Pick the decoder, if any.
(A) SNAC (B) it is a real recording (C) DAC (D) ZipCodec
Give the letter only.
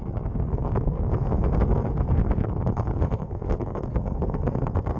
A